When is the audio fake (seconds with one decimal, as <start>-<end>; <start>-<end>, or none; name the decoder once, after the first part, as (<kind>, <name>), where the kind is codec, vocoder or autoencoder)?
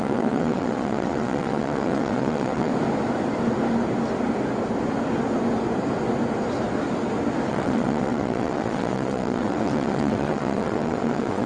0.0-2.7 (vocoder, WaveNeXt); 7.5-11.5